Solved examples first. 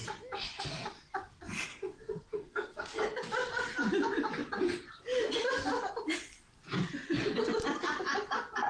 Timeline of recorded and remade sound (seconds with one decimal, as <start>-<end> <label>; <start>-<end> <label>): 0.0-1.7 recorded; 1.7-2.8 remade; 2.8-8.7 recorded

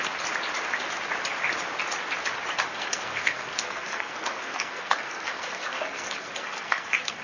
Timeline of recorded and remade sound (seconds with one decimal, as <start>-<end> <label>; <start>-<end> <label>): 0.0-2.7 recorded; 2.7-7.2 remade

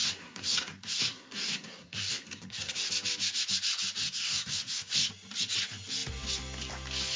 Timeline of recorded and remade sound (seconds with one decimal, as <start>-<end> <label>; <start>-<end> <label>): 0.0-2.9 remade; 2.9-4.0 recorded; 4.0-5.1 remade; 5.1-7.2 recorded